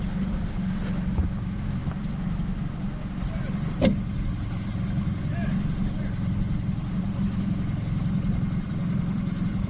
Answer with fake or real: real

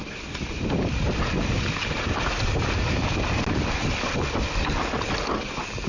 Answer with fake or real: real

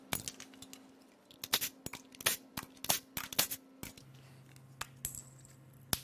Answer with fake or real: real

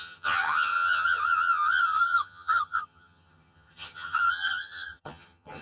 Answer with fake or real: fake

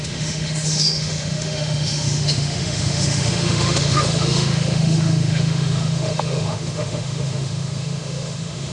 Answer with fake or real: fake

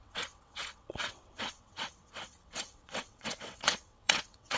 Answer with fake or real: fake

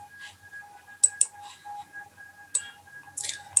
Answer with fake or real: real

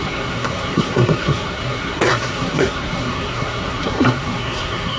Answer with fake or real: fake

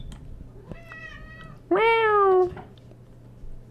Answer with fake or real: real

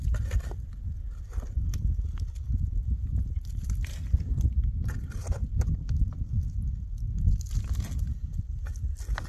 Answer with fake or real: real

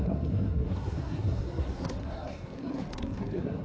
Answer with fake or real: fake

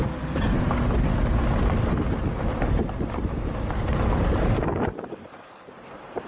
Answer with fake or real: real